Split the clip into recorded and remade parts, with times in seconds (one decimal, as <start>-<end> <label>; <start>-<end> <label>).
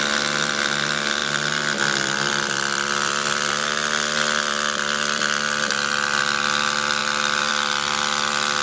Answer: 0.0-1.2 recorded; 1.2-6.2 remade; 6.2-8.6 recorded